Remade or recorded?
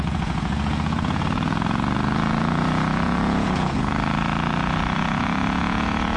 remade